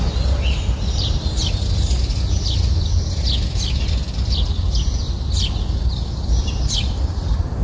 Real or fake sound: real